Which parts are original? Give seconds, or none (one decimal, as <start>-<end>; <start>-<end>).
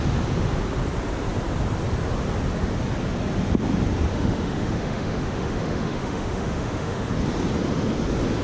0.0-4.1; 7.1-8.4